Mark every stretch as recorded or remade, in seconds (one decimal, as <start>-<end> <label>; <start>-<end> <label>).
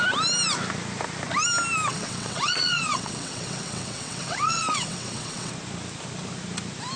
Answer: 0.0-1.9 recorded; 1.9-5.5 remade; 5.5-7.0 recorded